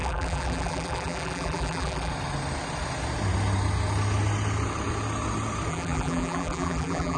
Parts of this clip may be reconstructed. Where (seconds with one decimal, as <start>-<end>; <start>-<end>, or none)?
0.0-2.1; 5.7-7.2